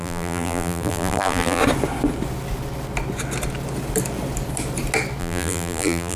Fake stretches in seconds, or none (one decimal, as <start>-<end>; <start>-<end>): 0.0-1.6; 5.2-6.2